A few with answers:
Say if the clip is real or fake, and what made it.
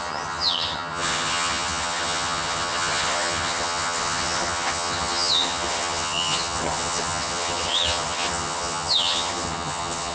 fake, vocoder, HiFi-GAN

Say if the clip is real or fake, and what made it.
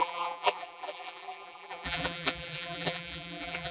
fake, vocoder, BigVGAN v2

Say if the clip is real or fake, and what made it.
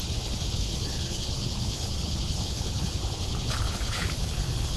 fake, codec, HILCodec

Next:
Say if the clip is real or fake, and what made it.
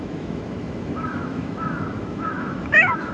fake, autoencoder, DAC-VAE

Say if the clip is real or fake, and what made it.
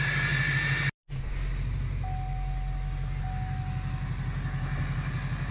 real